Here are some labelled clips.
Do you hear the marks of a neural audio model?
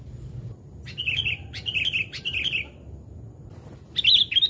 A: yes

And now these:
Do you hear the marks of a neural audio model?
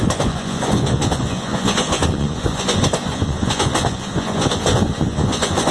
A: yes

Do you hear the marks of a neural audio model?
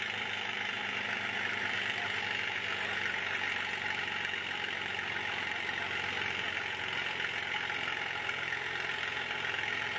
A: no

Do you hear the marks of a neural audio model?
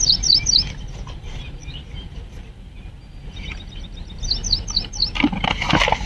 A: no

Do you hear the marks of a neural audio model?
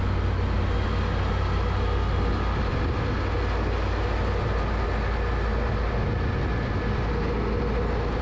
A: no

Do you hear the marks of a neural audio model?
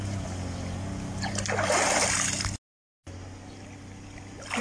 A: no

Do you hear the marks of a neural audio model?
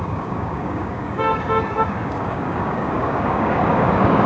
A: yes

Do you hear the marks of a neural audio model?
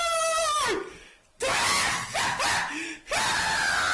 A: no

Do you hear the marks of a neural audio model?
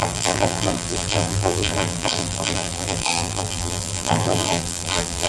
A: yes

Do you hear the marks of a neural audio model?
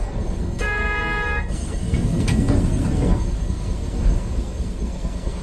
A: yes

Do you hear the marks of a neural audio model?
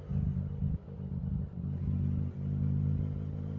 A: no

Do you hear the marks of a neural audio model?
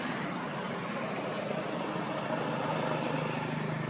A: no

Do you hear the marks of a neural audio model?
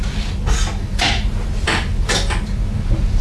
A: no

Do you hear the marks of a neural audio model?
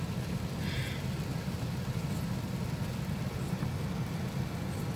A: no